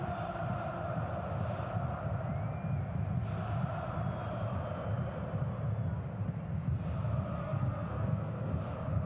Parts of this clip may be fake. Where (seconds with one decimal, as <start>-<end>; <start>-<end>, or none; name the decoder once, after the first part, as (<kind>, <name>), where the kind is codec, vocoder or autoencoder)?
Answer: 7.4-8.5 (codec, SNAC)